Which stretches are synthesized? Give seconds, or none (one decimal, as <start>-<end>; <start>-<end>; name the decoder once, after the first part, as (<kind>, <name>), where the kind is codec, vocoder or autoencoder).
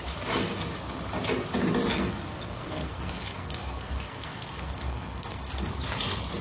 1.9-5.7 (codec, SNAC)